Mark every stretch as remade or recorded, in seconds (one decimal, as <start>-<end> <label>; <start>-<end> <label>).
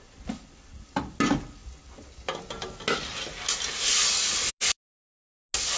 0.0-5.8 recorded